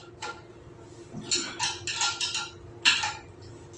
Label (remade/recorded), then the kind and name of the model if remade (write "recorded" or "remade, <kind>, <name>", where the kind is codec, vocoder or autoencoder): recorded